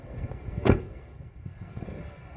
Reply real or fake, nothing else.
fake